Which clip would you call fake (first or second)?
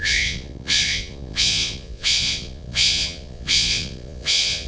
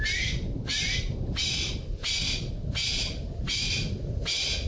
first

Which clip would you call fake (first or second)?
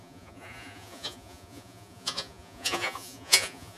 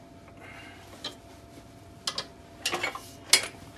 first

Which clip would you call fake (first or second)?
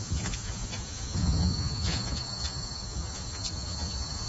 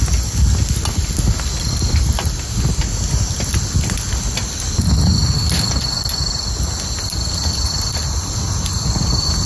first